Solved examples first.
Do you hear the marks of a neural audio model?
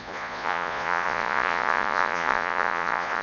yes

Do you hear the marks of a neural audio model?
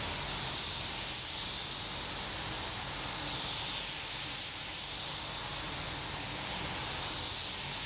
no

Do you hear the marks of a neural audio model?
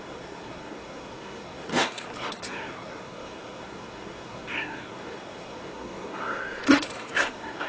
yes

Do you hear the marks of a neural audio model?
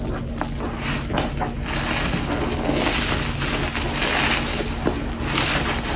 no